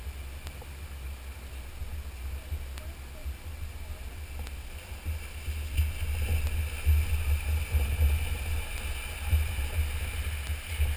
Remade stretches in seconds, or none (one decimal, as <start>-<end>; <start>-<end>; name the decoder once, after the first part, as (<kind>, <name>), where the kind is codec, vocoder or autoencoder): none